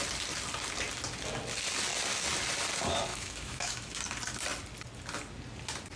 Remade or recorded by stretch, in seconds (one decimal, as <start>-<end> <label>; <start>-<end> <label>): 0.0-3.1 recorded; 3.1-4.0 remade; 4.0-6.0 recorded